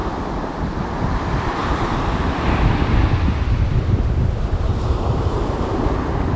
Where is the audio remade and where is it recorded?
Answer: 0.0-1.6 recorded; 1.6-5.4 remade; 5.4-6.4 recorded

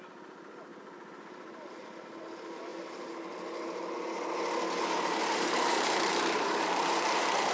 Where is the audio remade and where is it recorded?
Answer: 0.0-5.2 recorded; 5.2-7.5 remade

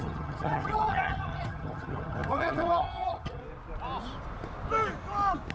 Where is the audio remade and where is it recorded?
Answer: 0.0-3.4 remade; 3.4-5.5 recorded

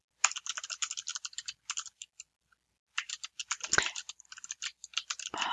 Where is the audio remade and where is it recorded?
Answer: 0.0-5.5 recorded